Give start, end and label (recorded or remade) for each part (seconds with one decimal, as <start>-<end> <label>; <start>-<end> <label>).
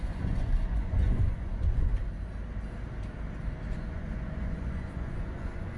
0.0-1.9 remade; 1.9-3.7 recorded; 3.7-5.8 remade